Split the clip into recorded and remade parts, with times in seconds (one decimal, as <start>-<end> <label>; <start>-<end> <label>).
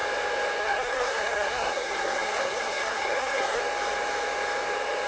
0.0-0.6 recorded; 0.6-3.6 remade; 3.6-5.1 recorded